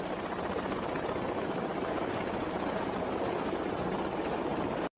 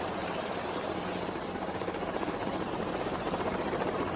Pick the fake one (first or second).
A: second